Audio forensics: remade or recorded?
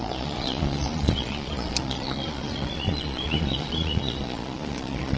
remade